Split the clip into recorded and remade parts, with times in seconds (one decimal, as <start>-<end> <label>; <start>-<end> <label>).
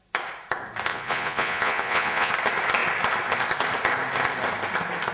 0.0-0.9 recorded; 0.9-2.3 remade; 2.3-5.1 recorded